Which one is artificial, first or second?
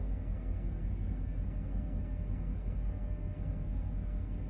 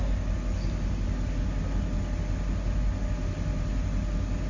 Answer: first